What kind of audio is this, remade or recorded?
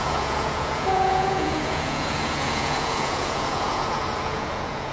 remade